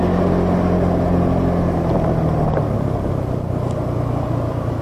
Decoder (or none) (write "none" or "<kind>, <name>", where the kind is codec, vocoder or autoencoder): none